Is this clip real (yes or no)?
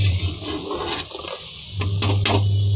yes